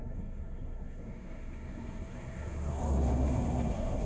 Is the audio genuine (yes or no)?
no